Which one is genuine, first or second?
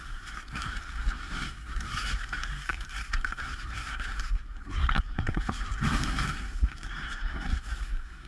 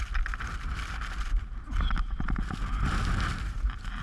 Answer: second